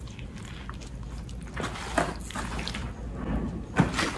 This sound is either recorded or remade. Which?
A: recorded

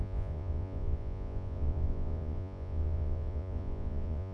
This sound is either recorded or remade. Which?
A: remade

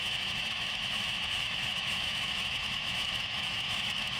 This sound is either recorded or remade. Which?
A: remade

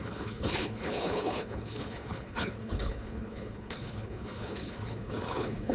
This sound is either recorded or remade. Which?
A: remade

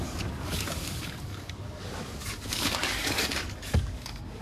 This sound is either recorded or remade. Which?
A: remade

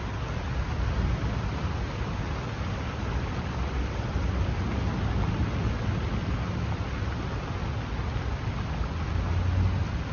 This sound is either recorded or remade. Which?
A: recorded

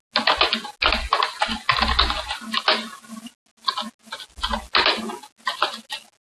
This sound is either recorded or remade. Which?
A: recorded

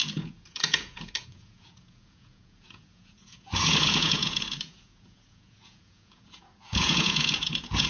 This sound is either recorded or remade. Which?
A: remade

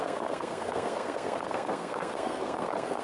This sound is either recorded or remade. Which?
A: remade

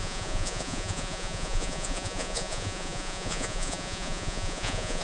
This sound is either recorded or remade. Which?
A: remade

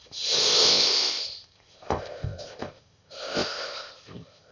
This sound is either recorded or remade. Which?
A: remade